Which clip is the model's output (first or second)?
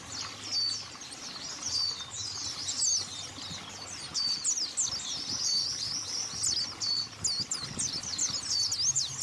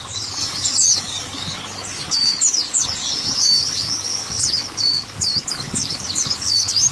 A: second